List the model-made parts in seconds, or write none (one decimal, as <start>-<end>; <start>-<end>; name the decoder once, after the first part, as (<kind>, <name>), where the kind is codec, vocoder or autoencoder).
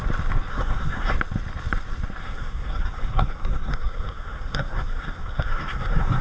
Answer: 0.5-1.1 (codec, SNAC); 2.2-6.2